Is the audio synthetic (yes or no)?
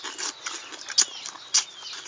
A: no